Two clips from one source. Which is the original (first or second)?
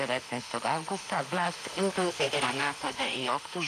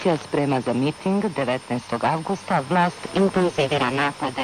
second